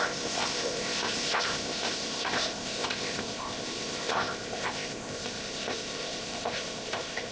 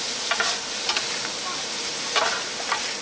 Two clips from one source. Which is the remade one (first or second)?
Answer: first